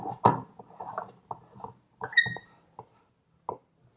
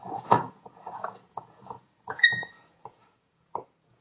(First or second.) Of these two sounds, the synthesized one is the second